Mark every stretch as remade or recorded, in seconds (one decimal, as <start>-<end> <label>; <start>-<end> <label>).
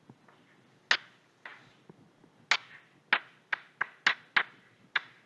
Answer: 0.0-5.3 recorded